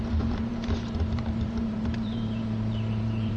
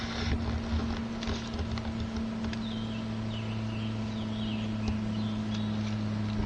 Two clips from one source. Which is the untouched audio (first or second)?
second